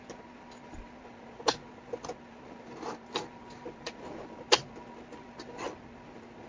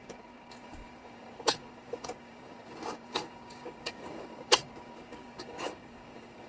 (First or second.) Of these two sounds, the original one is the first